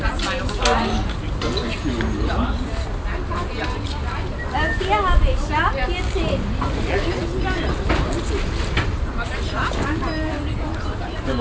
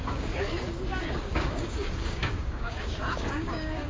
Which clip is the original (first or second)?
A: first